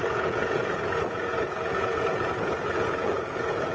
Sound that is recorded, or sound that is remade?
remade